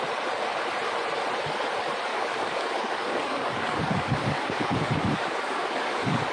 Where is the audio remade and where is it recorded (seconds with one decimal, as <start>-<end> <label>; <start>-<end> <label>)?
0.0-2.1 recorded; 2.1-6.3 remade